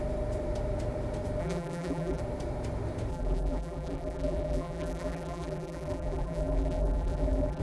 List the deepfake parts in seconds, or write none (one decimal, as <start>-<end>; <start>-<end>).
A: 1.4-2.2; 3.1-7.6